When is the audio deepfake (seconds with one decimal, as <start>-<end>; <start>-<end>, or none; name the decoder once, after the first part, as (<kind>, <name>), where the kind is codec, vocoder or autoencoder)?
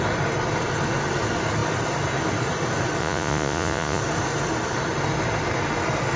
3.0-4.0 (vocoder, Vocos)